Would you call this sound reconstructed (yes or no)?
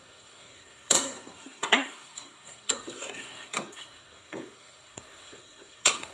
yes